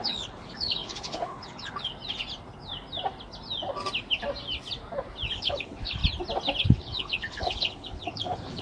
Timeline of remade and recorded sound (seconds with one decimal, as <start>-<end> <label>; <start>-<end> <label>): 0.0-1.9 remade; 1.9-5.3 recorded; 5.3-6.0 remade; 6.0-6.6 recorded; 6.6-8.6 remade